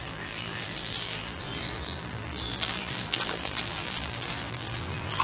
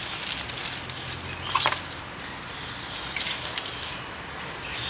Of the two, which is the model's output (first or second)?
first